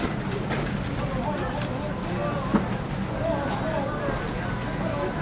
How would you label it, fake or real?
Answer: real